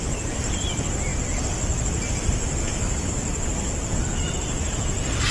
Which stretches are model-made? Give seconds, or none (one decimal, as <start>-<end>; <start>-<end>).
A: none